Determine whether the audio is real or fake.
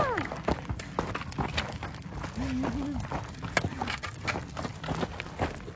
real